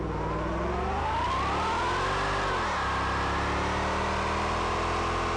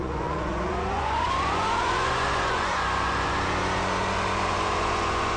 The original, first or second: first